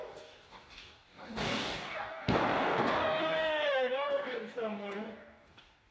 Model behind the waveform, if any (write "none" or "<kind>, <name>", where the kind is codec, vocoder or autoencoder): codec, DAC